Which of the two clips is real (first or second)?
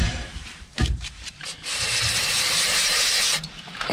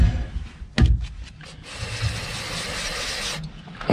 second